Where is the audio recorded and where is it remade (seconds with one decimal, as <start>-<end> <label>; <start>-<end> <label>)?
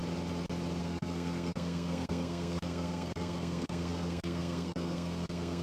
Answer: 0.0-0.8 recorded; 0.8-5.6 remade